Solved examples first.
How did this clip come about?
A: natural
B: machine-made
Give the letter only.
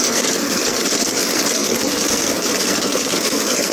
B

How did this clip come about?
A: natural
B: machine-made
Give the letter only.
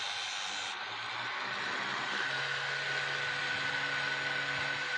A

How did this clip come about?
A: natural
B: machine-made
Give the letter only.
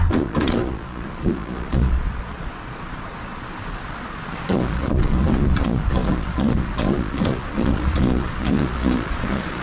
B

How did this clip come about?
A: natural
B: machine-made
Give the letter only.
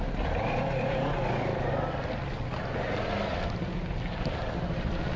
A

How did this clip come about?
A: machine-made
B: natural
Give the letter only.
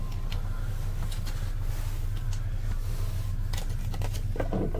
B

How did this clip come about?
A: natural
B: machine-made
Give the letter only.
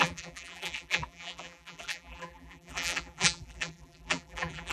B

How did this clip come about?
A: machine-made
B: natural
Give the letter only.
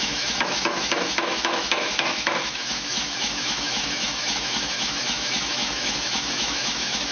A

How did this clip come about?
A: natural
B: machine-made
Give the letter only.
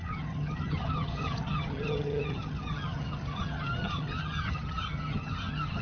B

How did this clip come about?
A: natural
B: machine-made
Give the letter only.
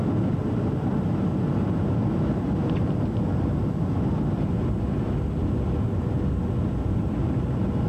A